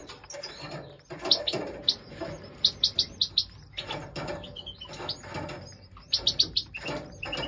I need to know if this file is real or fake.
real